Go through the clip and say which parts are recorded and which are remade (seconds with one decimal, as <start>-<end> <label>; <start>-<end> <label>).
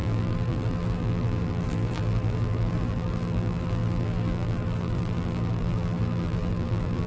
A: 0.0-7.1 remade